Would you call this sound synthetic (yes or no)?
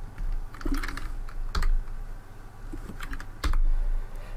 no